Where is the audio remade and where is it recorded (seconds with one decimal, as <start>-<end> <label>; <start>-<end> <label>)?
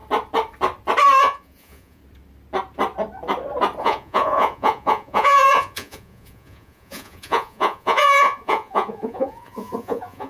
0.0-1.2 recorded; 1.2-2.0 remade; 2.0-3.8 recorded; 3.8-10.3 remade